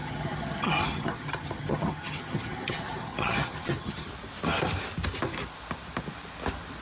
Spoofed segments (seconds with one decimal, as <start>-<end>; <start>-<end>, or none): 0.0-4.1